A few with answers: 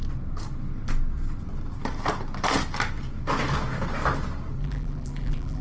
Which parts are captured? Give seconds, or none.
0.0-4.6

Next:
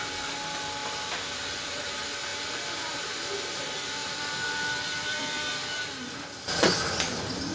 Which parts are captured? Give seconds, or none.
0.0-0.8; 1.9-4.0; 6.6-7.5

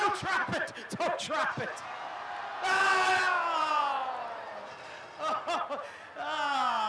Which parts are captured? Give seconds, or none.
0.0-2.5; 3.2-6.9

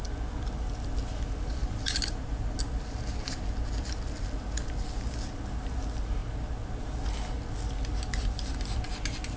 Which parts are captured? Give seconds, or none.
0.0-1.6; 2.6-9.4

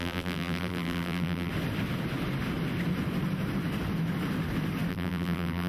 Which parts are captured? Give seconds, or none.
1.5-4.9